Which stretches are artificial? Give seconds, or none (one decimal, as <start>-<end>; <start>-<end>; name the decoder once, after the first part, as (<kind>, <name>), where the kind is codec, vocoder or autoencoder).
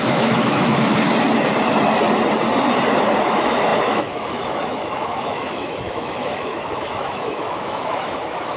0.0-0.9 (autoencoder, DAC-VAE); 3.2-8.6